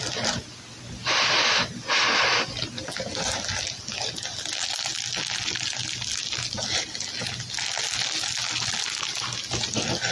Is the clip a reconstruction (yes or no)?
no